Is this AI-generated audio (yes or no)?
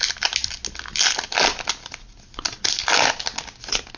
no